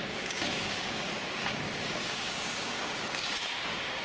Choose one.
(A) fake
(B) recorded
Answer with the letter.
A